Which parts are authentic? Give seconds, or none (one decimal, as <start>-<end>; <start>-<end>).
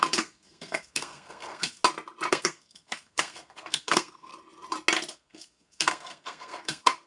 1.8-2.3; 4.3-5.1